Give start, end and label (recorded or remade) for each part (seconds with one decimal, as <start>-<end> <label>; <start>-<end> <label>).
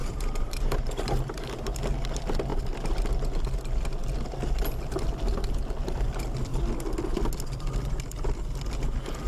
0.0-1.8 remade; 1.8-9.3 recorded